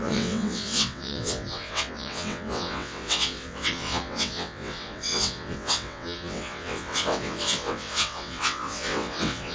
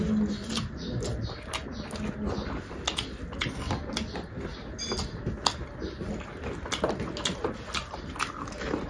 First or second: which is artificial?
first